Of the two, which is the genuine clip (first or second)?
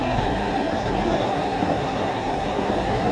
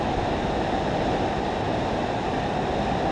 second